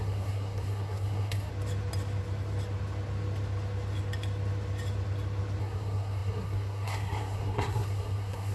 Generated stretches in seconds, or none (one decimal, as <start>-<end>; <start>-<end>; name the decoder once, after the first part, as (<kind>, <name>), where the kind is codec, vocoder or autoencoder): 0.0-1.5 (codec, SNAC); 5.6-8.5